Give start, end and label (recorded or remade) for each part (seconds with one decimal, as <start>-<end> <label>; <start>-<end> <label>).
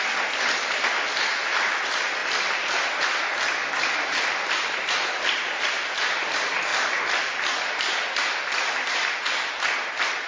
0.0-10.3 recorded